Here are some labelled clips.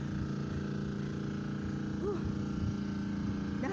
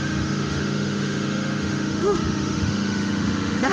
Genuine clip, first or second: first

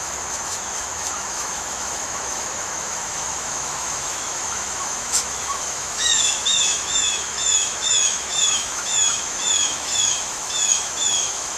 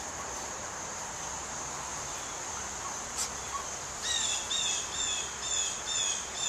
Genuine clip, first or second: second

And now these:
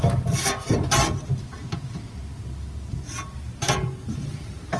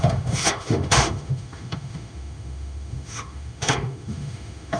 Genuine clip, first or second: first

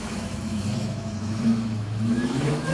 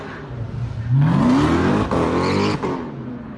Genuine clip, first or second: second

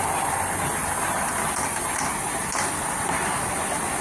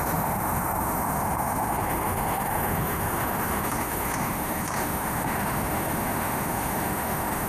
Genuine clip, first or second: first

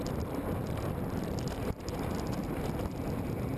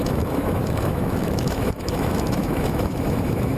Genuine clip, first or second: first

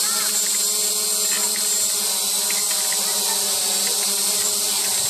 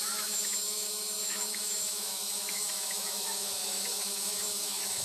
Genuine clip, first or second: first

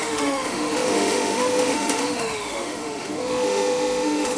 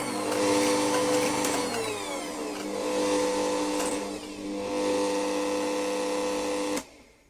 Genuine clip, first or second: second